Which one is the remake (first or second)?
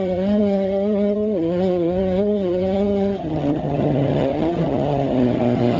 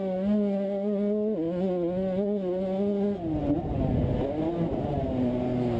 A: first